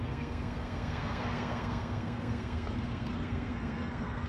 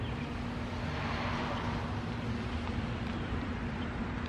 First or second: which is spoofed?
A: first